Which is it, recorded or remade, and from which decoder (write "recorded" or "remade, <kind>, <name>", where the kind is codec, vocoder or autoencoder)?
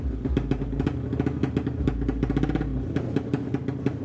recorded